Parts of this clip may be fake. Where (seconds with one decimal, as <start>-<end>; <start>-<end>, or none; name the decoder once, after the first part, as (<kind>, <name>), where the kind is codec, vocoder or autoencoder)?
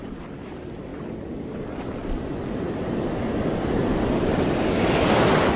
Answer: none